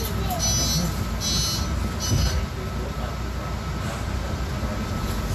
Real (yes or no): yes